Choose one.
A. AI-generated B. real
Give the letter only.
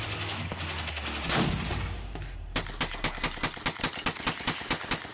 B